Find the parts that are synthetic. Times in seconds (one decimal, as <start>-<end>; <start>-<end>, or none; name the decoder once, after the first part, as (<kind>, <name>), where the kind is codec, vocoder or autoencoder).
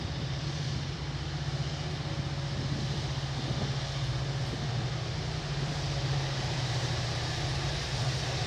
0.0-1.0 (vocoder, BigVGAN v2); 6.0-8.5